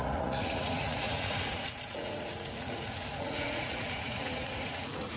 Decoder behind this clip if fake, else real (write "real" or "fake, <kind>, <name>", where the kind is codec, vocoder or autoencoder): fake, vocoder, Vocos